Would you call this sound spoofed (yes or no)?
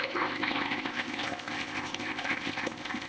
yes